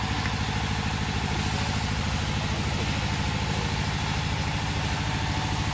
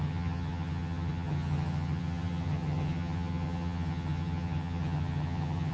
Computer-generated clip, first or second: second